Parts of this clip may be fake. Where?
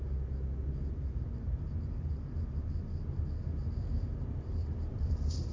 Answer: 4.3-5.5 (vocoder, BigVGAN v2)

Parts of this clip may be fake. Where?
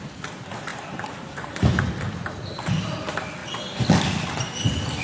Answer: 0.7-1.8 (vocoder, BigVGAN v2)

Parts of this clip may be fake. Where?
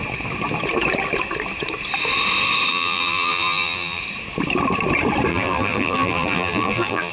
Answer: 2.7-4.0 (vocoder, BigVGAN v2); 5.3-7.1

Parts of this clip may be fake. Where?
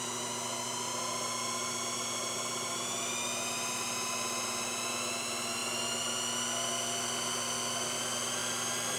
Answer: none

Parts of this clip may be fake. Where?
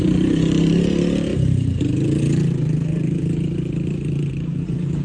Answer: 0.0-5.0 (vocoder, BigVGAN v2)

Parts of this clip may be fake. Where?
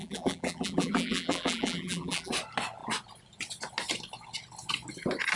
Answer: 0.0-2.3 (vocoder, BigVGAN v2)